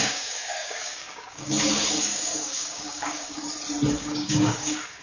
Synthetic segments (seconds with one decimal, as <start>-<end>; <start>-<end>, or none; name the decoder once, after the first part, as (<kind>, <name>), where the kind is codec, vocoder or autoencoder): 0.0-3.4 (codec, DAC); 4.0-5.0